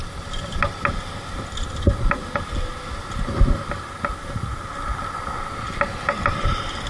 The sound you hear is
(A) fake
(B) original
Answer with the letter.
B